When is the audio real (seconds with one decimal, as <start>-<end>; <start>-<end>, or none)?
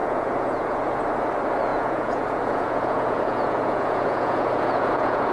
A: 1.0-1.7